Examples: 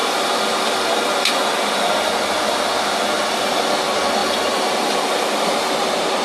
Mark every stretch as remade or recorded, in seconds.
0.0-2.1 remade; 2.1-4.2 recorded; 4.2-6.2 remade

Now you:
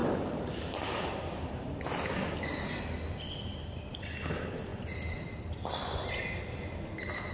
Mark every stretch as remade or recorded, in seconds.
0.0-1.8 remade; 1.8-7.3 recorded

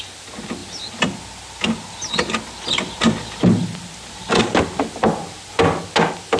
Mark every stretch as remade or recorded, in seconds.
0.0-6.4 recorded

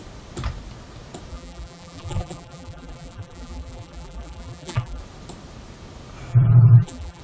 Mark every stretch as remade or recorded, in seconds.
0.0-1.3 recorded; 1.3-5.0 remade; 5.0-6.3 recorded; 6.3-7.2 remade